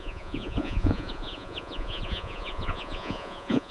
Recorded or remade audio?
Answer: remade